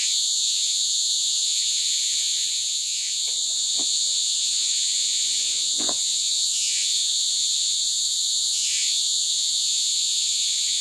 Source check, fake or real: fake